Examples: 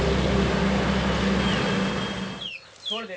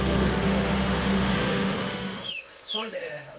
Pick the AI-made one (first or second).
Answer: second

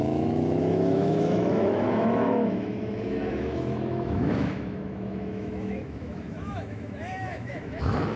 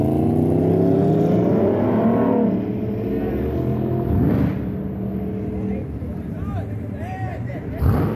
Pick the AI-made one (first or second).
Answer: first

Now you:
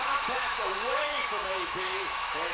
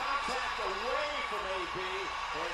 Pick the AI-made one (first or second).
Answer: first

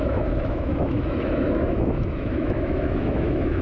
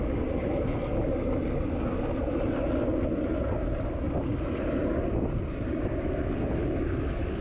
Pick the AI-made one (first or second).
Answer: first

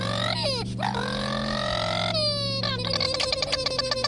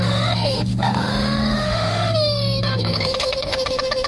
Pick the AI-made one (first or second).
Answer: second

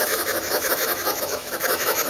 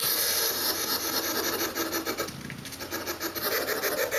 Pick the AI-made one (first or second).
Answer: first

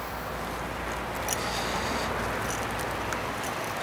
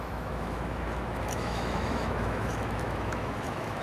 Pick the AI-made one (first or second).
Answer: second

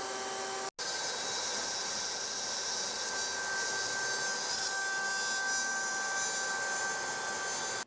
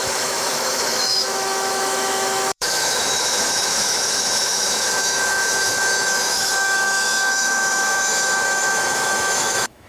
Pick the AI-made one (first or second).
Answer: second